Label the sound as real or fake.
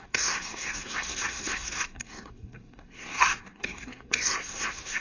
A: fake